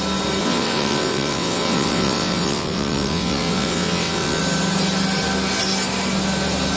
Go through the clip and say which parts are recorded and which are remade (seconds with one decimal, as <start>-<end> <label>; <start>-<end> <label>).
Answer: 0.0-0.4 recorded; 0.4-4.4 remade; 4.4-6.8 recorded